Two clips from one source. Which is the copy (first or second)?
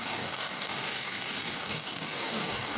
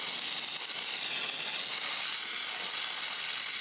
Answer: first